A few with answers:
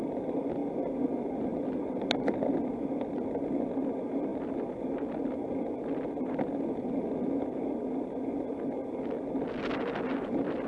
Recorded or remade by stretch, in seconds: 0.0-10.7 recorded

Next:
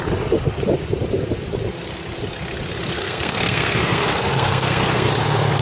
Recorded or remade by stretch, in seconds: 0.0-3.0 recorded; 3.0-5.1 remade; 5.1-5.6 recorded

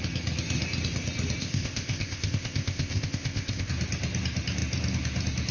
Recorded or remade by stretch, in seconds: 0.0-1.4 recorded; 1.4-3.7 remade; 3.7-5.5 recorded